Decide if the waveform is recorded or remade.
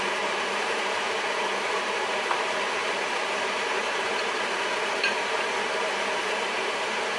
remade